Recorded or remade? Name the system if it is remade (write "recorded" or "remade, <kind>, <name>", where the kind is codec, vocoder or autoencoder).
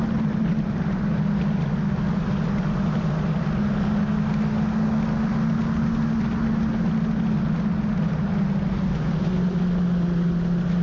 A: recorded